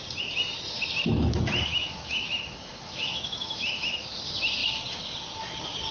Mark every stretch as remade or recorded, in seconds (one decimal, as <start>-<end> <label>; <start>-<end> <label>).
0.0-1.7 recorded; 1.7-4.0 remade; 4.0-5.9 recorded